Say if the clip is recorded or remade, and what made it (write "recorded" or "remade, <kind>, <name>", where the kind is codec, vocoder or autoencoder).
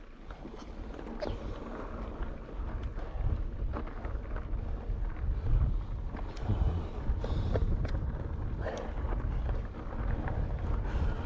recorded